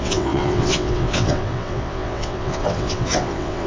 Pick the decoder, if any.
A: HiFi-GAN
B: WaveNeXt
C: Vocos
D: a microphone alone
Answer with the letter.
B